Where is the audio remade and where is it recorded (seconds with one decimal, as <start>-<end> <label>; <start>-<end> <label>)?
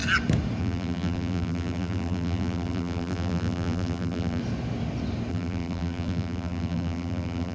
0.0-0.6 recorded; 0.6-4.4 remade; 4.4-5.3 recorded; 5.3-7.5 remade